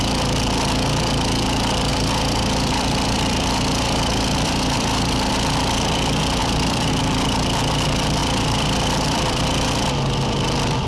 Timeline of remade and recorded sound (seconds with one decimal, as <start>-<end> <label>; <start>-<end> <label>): 0.0-1.9 recorded; 1.9-5.3 remade; 5.3-6.4 recorded; 6.4-6.9 remade; 6.9-8.2 recorded; 8.2-9.9 remade; 9.9-10.9 recorded